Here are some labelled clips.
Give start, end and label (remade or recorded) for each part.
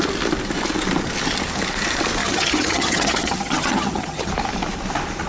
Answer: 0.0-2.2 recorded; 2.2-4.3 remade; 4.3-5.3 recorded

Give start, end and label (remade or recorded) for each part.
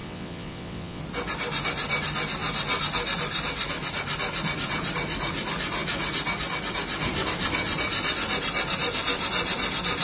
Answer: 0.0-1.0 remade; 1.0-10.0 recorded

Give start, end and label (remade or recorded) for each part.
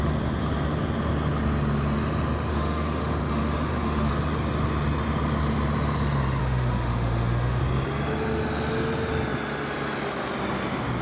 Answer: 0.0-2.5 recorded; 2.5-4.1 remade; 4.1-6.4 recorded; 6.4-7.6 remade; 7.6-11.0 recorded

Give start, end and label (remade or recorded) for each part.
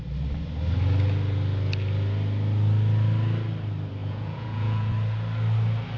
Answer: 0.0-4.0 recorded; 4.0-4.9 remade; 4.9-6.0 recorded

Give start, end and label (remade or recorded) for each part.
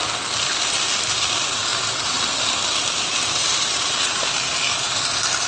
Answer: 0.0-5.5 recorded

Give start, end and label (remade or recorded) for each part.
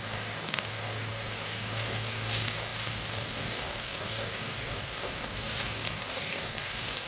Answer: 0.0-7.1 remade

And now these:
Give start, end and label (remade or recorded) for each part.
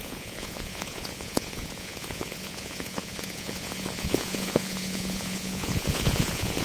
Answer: 0.0-6.6 remade